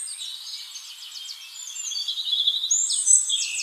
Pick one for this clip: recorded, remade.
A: recorded